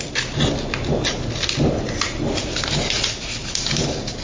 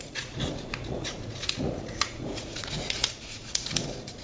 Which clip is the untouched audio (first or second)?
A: first